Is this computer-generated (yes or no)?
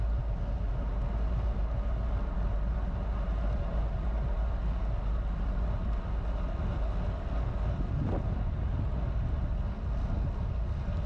no